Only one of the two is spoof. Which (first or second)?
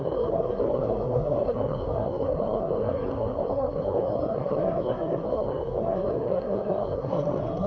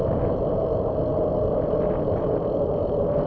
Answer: first